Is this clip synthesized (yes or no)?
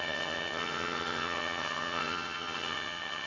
yes